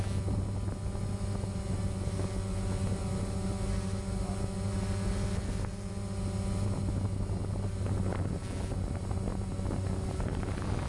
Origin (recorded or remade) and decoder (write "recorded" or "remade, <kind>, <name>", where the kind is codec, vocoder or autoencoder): recorded